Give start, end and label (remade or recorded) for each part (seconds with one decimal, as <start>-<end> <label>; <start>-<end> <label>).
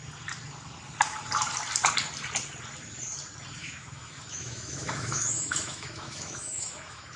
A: 0.0-3.6 recorded; 3.6-7.2 remade